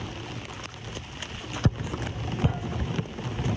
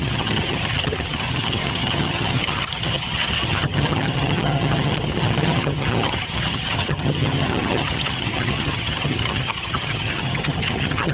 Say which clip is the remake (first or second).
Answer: second